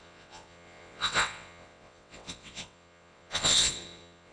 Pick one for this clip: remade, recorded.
remade